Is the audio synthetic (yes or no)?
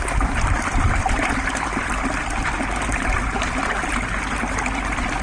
no